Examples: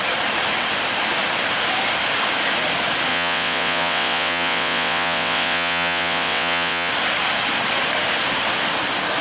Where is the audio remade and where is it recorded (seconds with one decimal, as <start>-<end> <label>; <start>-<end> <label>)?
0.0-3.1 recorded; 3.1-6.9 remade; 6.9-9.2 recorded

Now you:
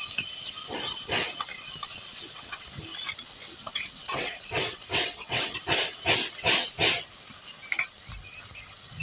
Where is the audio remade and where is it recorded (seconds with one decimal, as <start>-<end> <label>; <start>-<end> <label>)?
0.0-1.9 recorded; 1.9-2.8 remade; 2.8-3.4 recorded; 3.4-5.6 remade; 5.6-9.0 recorded

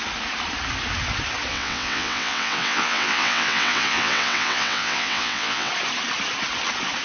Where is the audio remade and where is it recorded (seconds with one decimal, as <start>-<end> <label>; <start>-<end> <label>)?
0.0-1.5 recorded; 1.5-5.7 remade; 5.7-7.0 recorded

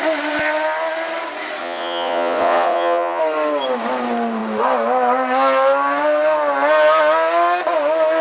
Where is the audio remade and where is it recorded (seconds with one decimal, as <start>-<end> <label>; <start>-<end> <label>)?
0.0-1.6 recorded; 1.6-3.2 remade; 3.2-8.2 recorded

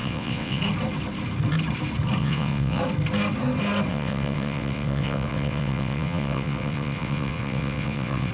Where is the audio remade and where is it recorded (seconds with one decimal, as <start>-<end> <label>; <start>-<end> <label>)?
0.0-0.6 remade; 0.6-2.2 recorded; 2.2-2.8 remade; 2.8-3.9 recorded; 3.9-8.3 remade